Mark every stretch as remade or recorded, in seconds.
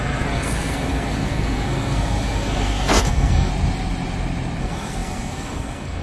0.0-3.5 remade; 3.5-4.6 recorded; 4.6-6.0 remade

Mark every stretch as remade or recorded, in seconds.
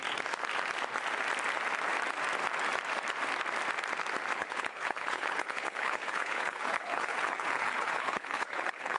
0.0-4.4 recorded; 4.4-9.0 remade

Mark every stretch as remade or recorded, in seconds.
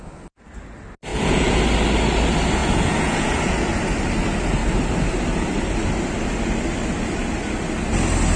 0.0-1.1 recorded; 1.1-1.6 remade; 1.6-2.6 recorded; 2.6-3.7 remade; 3.7-8.4 recorded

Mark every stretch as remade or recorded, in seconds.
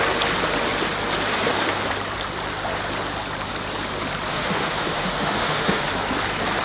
0.0-4.3 recorded; 4.3-5.9 remade; 5.9-6.6 recorded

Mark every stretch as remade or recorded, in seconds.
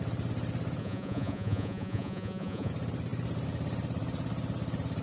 0.0-0.8 recorded; 0.8-2.7 remade; 2.7-5.0 recorded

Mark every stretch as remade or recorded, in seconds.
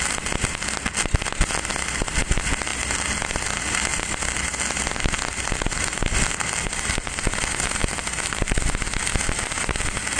0.0-10.2 recorded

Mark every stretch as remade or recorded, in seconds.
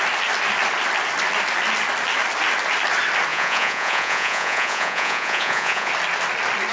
0.0-3.3 recorded; 3.3-5.9 remade; 5.9-6.7 recorded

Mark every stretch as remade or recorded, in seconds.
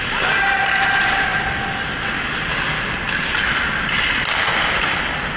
0.0-5.4 recorded